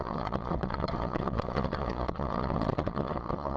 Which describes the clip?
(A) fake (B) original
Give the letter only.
A